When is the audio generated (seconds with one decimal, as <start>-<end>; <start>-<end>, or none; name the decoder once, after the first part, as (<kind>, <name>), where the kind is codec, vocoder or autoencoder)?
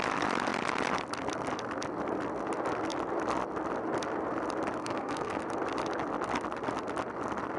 4.8-5.4 (codec, SNAC)